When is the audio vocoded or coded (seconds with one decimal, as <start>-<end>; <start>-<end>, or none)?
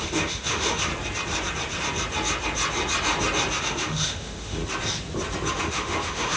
0.0-0.9; 3.6-4.6; 5.5-6.4